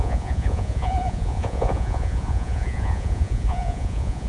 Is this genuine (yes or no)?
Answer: no